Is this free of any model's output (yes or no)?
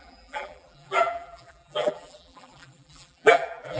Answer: no